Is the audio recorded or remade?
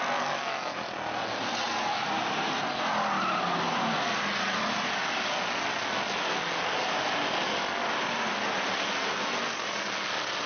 recorded